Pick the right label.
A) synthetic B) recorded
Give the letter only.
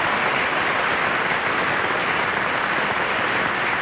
B